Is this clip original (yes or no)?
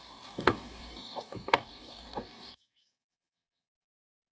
no